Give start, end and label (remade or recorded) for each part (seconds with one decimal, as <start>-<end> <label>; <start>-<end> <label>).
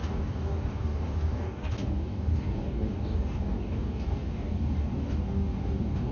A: 0.0-6.1 remade